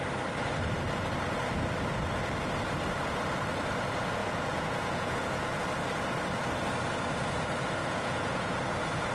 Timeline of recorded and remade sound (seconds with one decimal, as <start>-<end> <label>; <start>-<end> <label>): 0.0-4.2 recorded; 4.2-5.6 remade; 5.6-7.8 recorded; 7.8-8.5 remade; 8.5-9.1 recorded